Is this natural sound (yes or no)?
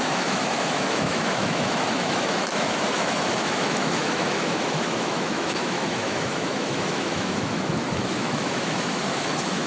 no